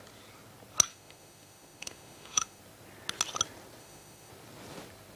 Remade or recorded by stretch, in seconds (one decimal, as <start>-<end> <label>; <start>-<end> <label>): 0.0-0.9 recorded; 0.9-2.6 remade; 2.6-3.8 recorded; 3.8-4.3 remade; 4.3-5.2 recorded